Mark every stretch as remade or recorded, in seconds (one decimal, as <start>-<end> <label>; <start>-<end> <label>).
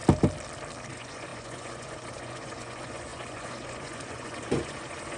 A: 0.0-0.9 recorded; 0.9-5.2 remade